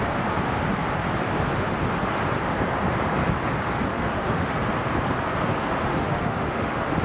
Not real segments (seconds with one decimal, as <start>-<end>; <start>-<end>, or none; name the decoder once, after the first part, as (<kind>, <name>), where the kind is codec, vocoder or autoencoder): 3.9-4.6 (autoencoder, DAC-VAE); 5.9-7.0